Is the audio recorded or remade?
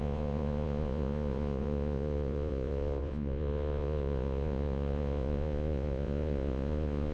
remade